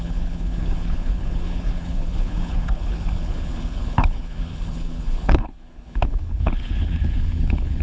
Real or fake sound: fake